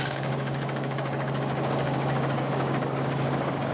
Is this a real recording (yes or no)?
no